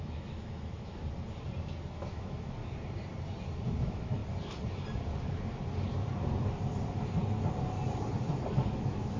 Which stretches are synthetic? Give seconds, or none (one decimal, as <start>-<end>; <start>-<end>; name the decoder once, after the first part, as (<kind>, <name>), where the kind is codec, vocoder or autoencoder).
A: 0.0-1.0 (autoencoder, DAC-VAE); 1.9-2.6; 3.8-4.2; 8.7-9.2